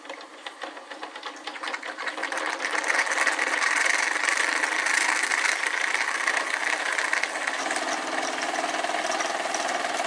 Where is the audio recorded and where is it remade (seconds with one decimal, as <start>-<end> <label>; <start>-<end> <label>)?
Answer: 0.0-10.1 recorded